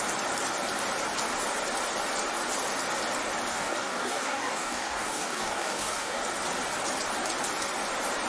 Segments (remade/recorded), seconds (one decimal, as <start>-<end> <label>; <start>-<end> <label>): 0.0-3.5 recorded; 3.5-6.2 remade; 6.2-8.3 recorded